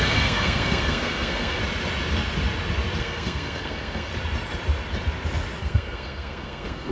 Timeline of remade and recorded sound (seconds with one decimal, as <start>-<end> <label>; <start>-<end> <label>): 0.0-1.6 remade; 1.6-3.0 recorded; 3.0-4.1 remade; 4.1-5.6 recorded; 5.6-6.9 remade